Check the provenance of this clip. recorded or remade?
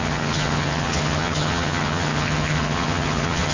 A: remade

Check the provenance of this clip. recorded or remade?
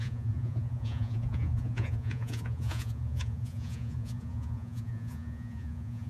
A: remade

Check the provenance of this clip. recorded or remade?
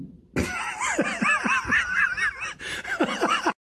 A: recorded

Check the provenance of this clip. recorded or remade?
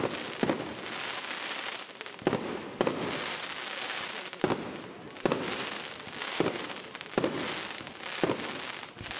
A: recorded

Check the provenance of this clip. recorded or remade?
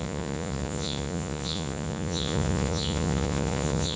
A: remade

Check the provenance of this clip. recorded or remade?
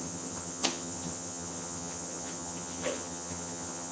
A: remade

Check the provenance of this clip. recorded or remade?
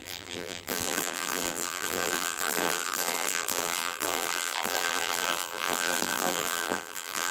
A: remade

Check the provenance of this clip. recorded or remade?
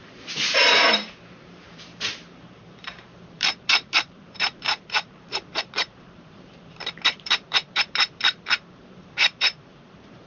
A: remade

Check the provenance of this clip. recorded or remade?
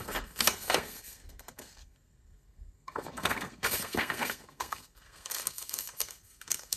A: remade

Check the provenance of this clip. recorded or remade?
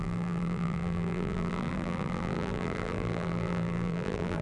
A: remade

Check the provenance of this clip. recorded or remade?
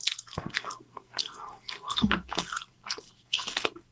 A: remade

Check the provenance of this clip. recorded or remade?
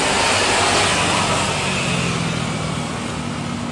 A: recorded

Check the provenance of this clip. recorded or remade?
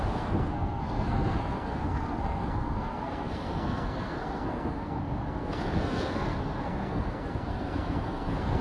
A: remade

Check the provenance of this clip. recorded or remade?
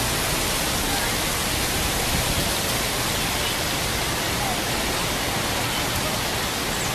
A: recorded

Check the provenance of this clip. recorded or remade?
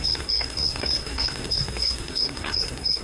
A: remade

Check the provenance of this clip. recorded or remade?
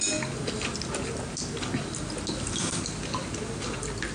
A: recorded